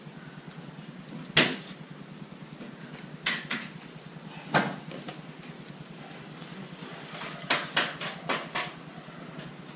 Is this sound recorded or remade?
recorded